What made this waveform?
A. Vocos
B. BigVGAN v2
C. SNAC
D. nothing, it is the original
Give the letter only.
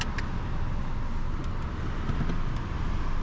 D